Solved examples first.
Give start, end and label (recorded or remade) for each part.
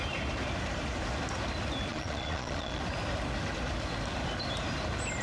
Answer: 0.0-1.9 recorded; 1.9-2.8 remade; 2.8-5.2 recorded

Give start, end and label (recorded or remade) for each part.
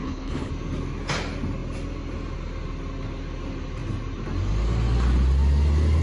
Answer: 0.0-0.5 remade; 0.5-6.0 recorded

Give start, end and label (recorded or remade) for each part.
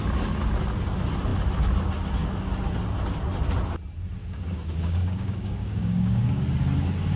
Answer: 0.0-4.2 recorded; 4.2-6.4 remade; 6.4-7.2 recorded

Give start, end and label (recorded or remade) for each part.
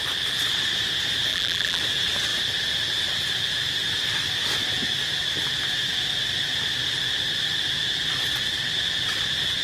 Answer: 0.0-1.3 recorded; 1.3-1.8 remade; 1.8-9.6 recorded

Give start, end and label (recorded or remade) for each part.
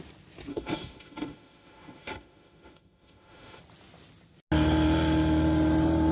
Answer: 0.0-0.5 recorded; 0.5-3.6 remade; 3.6-6.1 recorded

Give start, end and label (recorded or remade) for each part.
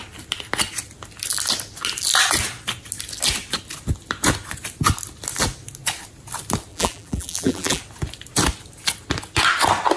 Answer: 0.0-6.7 recorded; 6.7-7.8 remade; 7.8-10.0 recorded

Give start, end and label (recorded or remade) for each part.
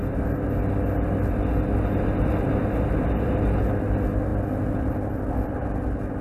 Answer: 0.0-2.6 recorded; 2.6-3.3 remade; 3.3-6.2 recorded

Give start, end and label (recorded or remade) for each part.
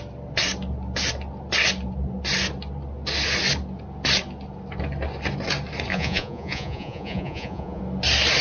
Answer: 0.0-5.9 recorded; 5.9-7.8 remade; 7.8-8.4 recorded